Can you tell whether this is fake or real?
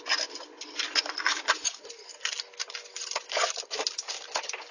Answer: real